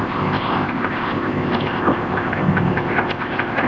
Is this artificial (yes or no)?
yes